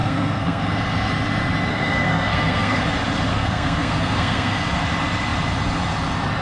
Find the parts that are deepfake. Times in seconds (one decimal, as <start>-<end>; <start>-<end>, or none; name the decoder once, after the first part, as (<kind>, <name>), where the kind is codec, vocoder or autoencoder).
0.0-0.6 (codec, SNAC); 1.7-2.8; 3.3-4.6